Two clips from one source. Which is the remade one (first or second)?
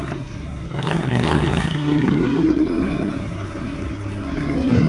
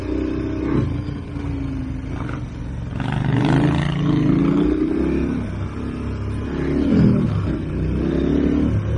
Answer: first